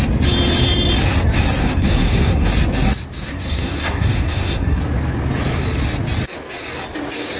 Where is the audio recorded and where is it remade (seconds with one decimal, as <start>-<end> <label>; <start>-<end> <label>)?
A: 0.0-1.6 recorded; 1.6-2.5 remade; 2.5-3.3 recorded; 3.3-4.8 remade; 4.8-7.4 recorded